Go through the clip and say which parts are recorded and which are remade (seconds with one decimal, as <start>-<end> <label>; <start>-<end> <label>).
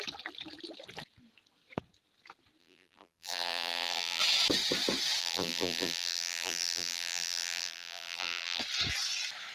0.0-2.6 recorded; 2.6-4.2 remade; 4.2-5.2 recorded; 5.2-8.6 remade; 8.6-9.5 recorded